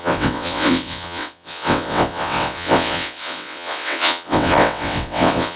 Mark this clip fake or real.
fake